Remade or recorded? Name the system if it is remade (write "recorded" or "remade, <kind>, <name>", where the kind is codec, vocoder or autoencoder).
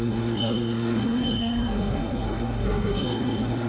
remade, codec, SNAC